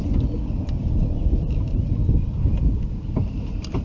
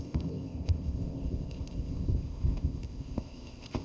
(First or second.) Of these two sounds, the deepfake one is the second